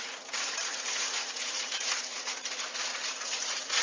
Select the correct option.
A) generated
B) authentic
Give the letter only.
A